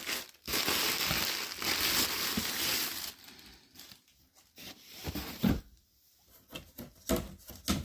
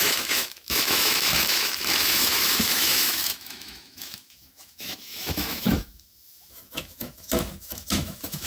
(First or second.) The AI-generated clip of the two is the second